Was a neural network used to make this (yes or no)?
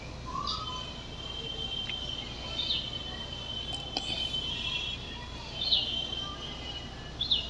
no